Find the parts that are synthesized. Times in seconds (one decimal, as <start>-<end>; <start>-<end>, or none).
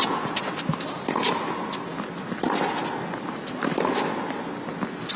none